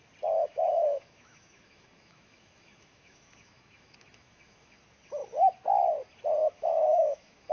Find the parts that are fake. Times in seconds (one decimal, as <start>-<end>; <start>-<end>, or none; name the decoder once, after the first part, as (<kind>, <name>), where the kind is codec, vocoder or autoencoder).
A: 0.4-4.7 (autoencoder, DAC-VAE); 6.4-7.5